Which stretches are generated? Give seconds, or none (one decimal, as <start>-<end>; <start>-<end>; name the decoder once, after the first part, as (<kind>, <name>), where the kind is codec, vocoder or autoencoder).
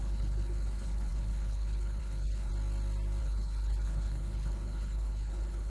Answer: 0.0-2.5 (codec, HILCodec); 3.2-5.7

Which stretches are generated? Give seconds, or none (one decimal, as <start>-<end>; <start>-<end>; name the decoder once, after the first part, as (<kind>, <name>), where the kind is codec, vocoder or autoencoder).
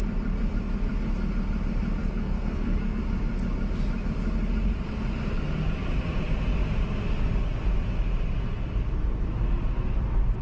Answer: 2.0-3.0 (codec, SNAC)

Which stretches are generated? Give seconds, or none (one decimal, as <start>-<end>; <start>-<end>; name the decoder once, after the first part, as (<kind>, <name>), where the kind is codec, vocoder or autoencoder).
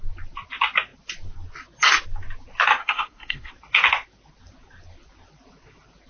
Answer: 2.8-3.5 (codec, SNAC)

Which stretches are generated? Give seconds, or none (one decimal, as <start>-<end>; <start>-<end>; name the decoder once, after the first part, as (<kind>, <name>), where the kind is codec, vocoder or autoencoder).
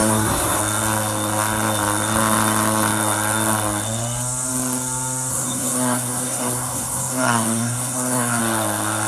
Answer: 0.0-0.6 (codec, SNAC); 5.3-8.4